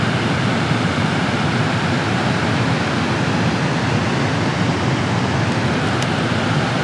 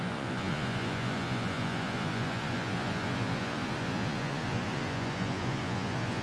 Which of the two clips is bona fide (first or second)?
first